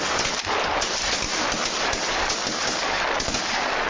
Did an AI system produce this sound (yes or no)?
no